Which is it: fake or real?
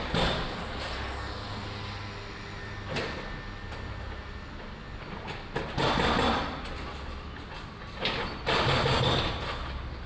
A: real